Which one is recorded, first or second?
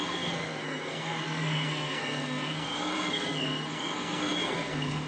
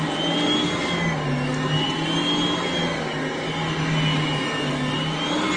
second